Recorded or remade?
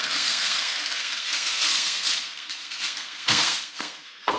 remade